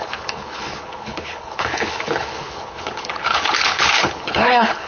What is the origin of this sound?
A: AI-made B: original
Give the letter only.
A